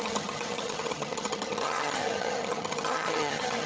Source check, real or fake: fake